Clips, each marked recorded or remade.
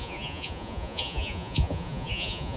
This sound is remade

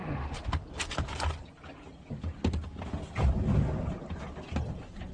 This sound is recorded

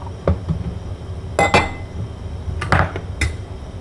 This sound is recorded